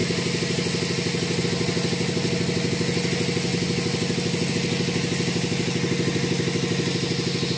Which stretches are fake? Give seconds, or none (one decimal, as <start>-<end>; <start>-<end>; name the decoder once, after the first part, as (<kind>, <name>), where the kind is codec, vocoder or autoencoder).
none